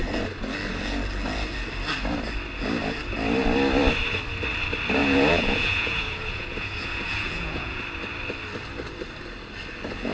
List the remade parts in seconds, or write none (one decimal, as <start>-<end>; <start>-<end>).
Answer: 5.0-7.8